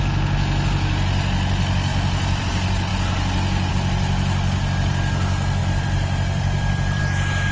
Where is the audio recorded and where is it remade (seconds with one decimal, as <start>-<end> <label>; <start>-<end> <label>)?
0.0-1.9 recorded; 1.9-2.5 remade; 2.5-5.6 recorded; 5.6-7.0 remade; 7.0-7.5 recorded

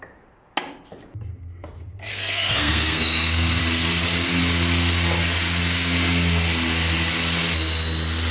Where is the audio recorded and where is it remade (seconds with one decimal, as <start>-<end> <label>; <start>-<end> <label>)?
0.0-2.1 recorded; 2.1-3.6 remade; 3.6-8.3 recorded

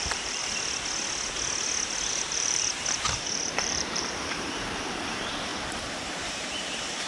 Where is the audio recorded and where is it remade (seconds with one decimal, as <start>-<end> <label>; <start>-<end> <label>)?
0.0-0.4 remade; 0.4-2.1 recorded; 2.1-5.5 remade; 5.5-6.1 recorded; 6.1-7.1 remade

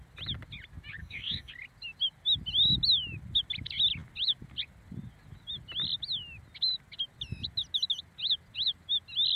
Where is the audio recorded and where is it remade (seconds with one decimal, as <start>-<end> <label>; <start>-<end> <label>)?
0.0-1.0 recorded; 1.0-1.5 remade; 1.5-9.4 recorded